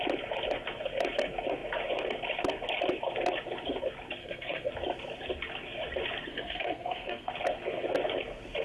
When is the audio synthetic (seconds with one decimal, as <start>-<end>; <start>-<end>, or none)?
4.2-4.7; 6.3-7.3